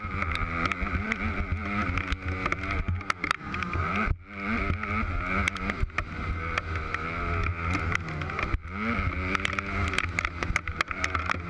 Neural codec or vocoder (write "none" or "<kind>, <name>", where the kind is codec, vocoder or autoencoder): none